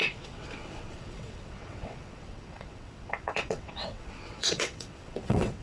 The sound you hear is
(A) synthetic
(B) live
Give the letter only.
A